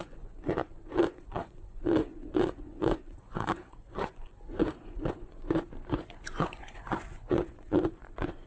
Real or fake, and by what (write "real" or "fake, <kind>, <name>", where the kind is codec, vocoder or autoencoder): fake, vocoder, Vocos